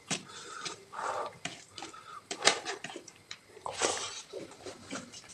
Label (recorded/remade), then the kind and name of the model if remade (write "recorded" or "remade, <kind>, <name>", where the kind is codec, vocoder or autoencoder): remade, vocoder, BigVGAN v2